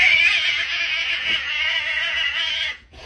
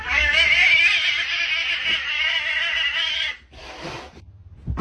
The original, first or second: second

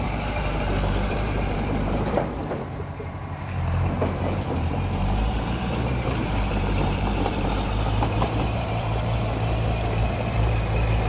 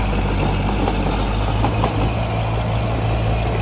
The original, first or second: second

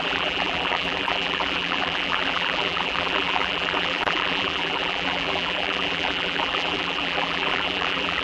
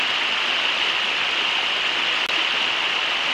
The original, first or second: second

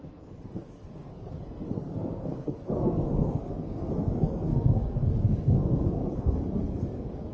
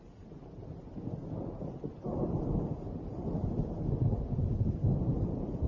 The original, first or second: second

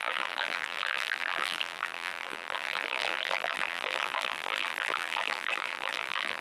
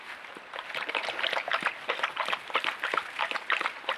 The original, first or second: second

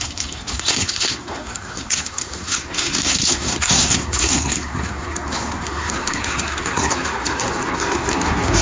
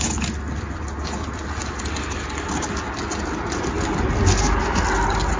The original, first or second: second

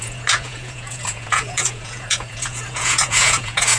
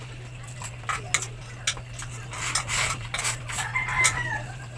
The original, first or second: second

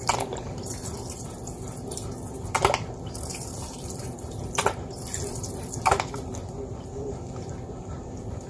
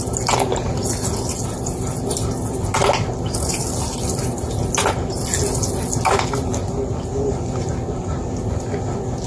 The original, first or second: second